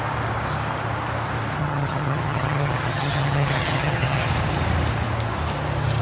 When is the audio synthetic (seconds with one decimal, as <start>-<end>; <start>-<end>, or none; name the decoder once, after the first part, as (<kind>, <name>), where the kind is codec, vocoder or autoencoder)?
1.6-4.3 (vocoder, HiFi-GAN)